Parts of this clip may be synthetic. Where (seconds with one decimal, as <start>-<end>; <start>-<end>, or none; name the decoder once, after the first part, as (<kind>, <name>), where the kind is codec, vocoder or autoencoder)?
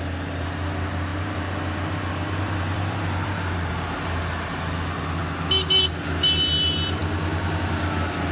1.1-3.7 (vocoder, BigVGAN v2)